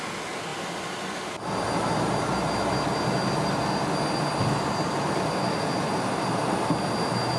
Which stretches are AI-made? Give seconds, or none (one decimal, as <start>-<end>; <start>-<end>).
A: none